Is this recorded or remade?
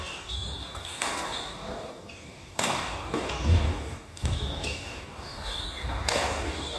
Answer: remade